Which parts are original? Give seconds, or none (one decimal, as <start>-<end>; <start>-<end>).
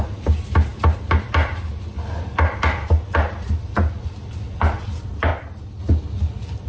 0.0-6.7